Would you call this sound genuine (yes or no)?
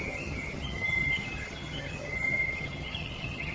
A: no